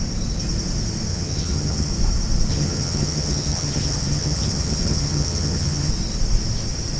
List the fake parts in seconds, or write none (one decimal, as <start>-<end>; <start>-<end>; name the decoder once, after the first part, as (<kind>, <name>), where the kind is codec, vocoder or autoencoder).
1.1-1.9 (vocoder, HiFi-GAN); 2.5-5.9